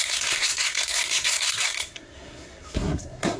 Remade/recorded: remade